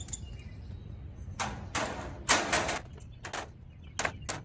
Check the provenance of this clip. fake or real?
real